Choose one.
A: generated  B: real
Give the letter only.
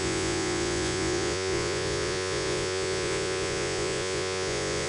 A